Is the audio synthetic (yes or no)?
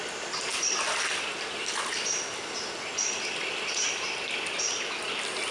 no